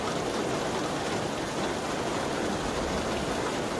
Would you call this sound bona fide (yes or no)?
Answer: yes